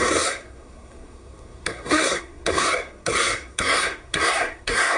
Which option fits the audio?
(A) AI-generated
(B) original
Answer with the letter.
A